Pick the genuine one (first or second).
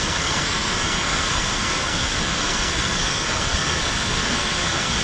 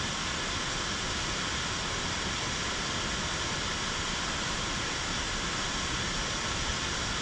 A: second